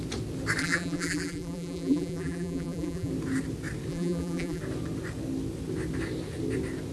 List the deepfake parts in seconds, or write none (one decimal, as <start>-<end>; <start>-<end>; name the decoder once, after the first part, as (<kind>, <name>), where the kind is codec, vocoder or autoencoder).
0.6-3.1 (vocoder, BigVGAN v2); 3.9-4.6